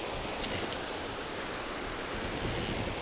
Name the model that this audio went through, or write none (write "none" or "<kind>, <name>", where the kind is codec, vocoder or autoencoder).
none